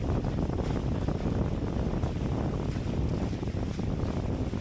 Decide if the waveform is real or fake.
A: real